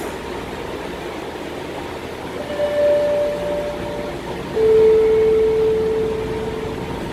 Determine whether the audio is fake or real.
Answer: real